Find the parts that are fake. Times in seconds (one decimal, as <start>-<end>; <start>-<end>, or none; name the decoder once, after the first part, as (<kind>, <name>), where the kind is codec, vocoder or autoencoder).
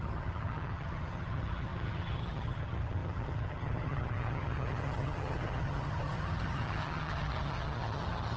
0.0-8.4 (vocoder, HiFi-GAN)